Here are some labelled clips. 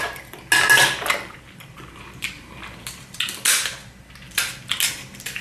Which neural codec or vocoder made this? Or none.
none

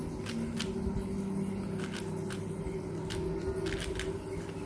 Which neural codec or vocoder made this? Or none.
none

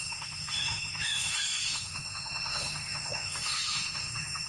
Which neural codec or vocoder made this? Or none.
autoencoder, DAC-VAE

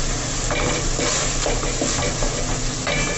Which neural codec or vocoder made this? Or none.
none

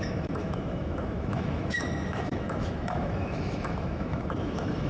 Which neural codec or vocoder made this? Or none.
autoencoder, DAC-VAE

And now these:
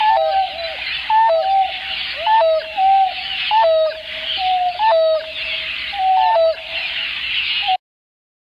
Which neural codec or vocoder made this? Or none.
none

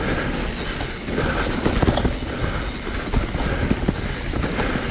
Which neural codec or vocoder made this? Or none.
none